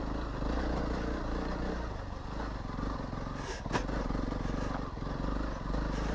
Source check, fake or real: real